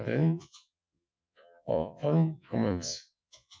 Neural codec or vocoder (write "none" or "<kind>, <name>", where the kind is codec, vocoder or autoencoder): vocoder, Vocos